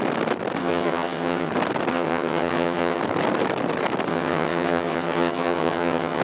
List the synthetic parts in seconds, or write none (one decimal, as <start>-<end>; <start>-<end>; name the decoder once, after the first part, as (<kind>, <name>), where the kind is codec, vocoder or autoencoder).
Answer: 0.6-1.5 (vocoder, HiFi-GAN); 1.9-3.0; 4.1-6.2